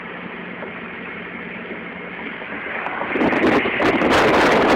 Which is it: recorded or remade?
recorded